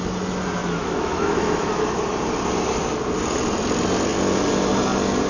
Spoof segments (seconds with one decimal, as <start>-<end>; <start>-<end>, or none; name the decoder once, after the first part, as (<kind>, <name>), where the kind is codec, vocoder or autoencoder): 0.6-2.0 (autoencoder, DAC-VAE)

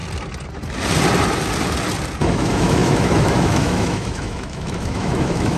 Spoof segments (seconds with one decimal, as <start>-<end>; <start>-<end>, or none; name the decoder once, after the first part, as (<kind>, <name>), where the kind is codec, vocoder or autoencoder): 2.2-5.6 (autoencoder, DAC-VAE)